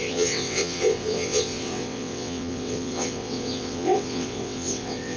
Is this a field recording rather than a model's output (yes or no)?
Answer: no